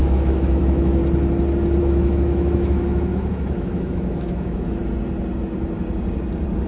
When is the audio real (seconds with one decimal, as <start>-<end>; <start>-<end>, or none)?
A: 1.0-1.8; 4.8-6.7